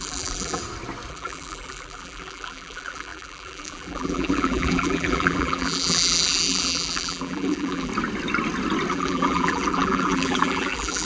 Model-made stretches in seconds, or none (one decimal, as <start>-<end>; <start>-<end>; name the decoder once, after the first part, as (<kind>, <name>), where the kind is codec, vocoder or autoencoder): 0.0-0.6 (vocoder, BigVGAN v2); 1.1-7.9; 8.9-11.0